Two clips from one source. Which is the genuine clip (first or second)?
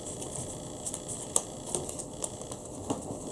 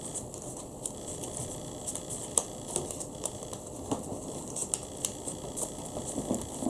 first